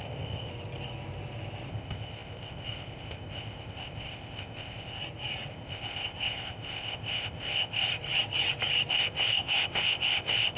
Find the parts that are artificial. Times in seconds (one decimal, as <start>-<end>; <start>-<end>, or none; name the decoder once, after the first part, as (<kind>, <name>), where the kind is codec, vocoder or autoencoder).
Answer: 0.0-0.5 (codec, ZipCodec); 1.7-5.0; 5.5-7.9; 8.9-10.6